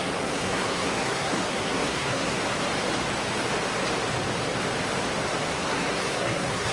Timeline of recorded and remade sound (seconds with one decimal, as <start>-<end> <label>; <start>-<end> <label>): 0.0-2.4 remade; 2.4-5.5 recorded; 5.5-6.7 remade